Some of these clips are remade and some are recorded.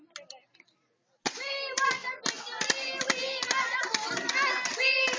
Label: recorded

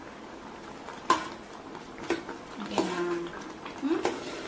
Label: recorded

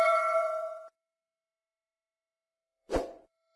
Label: remade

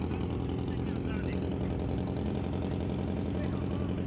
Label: recorded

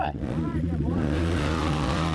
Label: remade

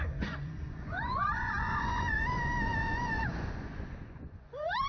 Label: remade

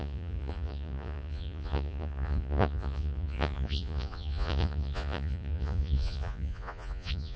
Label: remade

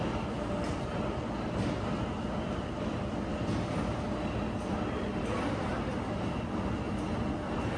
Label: recorded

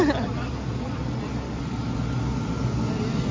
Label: recorded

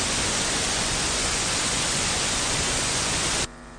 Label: remade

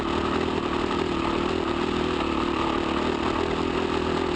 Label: recorded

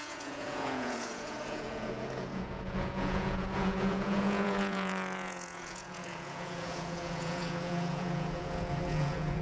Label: remade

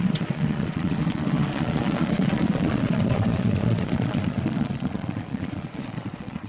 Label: remade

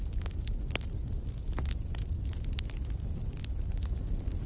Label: recorded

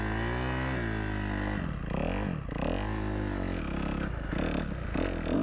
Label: recorded